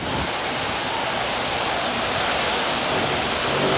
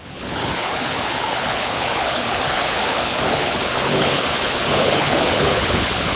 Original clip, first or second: first